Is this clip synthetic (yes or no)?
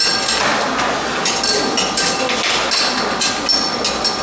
no